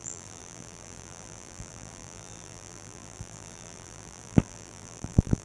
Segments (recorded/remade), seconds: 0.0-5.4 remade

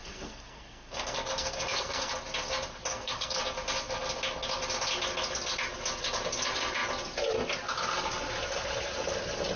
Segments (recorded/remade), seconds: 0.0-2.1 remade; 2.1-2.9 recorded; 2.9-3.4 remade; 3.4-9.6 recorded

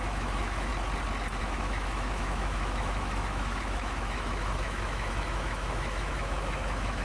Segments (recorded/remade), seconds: 0.0-0.7 remade; 0.7-1.4 recorded; 1.4-7.0 remade

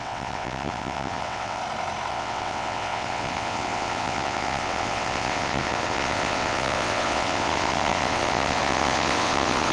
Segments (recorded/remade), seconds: 0.0-1.6 remade; 1.6-2.1 recorded; 2.1-9.7 remade

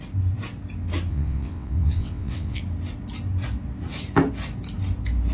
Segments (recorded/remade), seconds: 0.0-1.1 recorded; 1.1-2.6 remade; 2.6-5.3 recorded

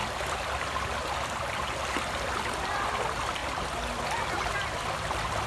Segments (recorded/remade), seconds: 0.0-2.3 recorded; 2.3-3.4 remade; 3.4-4.5 recorded; 4.5-5.5 remade